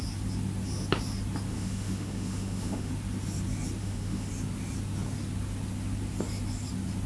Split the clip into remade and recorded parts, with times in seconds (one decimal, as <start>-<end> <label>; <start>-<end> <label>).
0.0-1.5 recorded; 1.5-2.9 remade; 2.9-3.8 recorded; 3.8-4.3 remade; 4.3-7.1 recorded